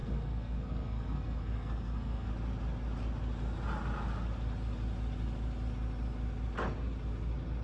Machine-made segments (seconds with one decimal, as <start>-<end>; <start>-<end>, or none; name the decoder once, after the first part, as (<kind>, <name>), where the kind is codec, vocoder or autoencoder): 0.0-2.3 (codec, SNAC)